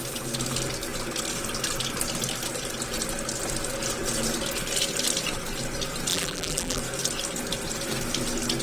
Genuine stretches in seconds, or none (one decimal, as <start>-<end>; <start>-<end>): 0.0-6.1; 6.8-8.6